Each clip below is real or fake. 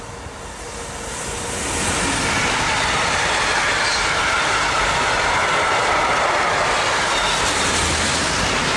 real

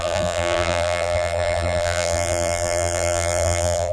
fake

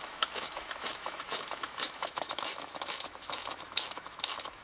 fake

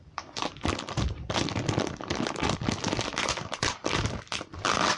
fake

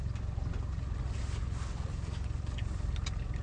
real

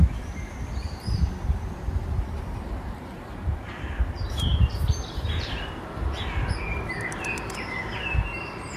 fake